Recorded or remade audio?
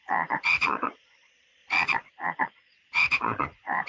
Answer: remade